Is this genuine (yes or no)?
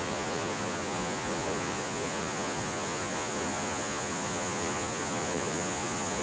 no